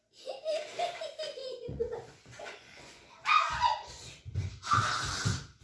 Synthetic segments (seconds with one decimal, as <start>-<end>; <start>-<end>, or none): 1.4-3.1; 3.5-4.2